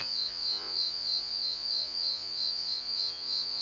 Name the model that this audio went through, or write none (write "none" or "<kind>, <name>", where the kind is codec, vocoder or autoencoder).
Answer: vocoder, Vocos